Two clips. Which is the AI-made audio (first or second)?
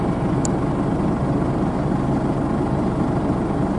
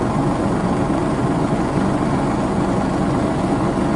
second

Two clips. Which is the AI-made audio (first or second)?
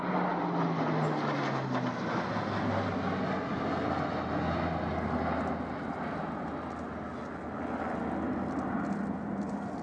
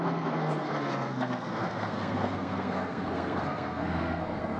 second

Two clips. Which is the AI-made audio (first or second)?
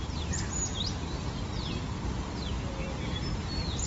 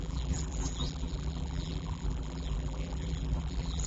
second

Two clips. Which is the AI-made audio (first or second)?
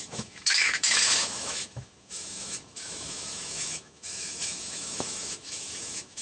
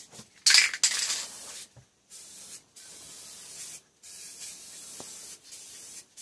first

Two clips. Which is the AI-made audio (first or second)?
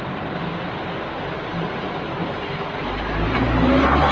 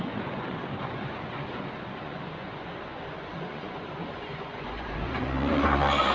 second